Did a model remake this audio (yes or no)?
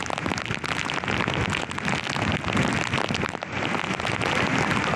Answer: no